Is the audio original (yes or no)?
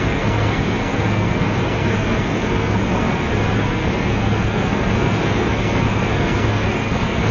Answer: no